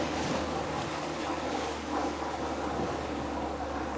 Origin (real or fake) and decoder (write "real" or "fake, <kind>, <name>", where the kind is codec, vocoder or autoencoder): fake, codec, DAC